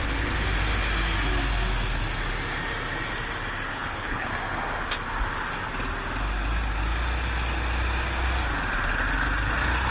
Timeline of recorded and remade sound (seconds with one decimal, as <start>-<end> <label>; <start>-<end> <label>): 0.0-3.7 recorded; 3.7-4.3 remade; 4.3-9.9 recorded